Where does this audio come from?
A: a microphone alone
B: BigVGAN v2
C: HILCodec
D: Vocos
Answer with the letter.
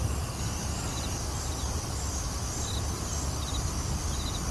A